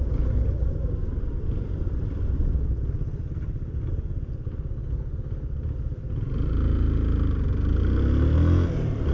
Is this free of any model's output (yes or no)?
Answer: yes